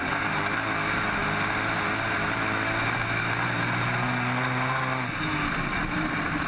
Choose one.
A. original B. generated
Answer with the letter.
A